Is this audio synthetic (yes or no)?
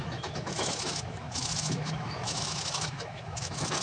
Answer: yes